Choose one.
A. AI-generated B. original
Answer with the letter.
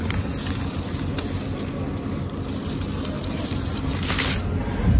B